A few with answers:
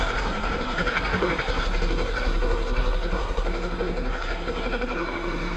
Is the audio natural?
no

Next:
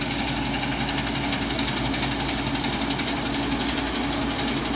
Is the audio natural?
yes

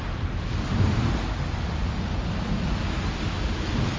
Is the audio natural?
yes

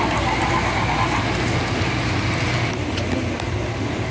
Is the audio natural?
yes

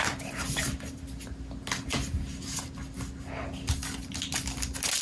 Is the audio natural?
yes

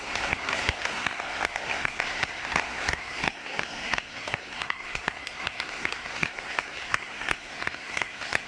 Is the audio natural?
no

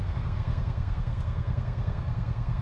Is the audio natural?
no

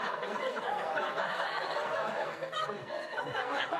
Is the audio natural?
no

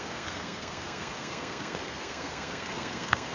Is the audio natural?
no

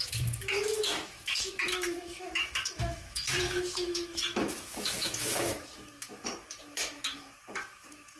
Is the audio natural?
no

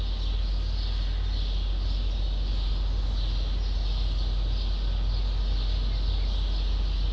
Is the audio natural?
yes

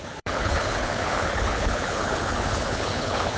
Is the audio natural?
no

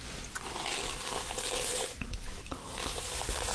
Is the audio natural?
yes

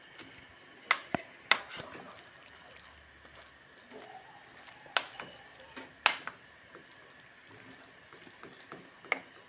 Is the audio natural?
yes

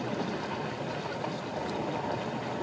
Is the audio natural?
yes